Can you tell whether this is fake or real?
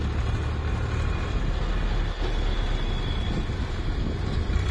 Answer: real